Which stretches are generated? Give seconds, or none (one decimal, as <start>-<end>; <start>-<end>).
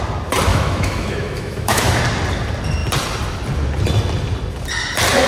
0.5-2.0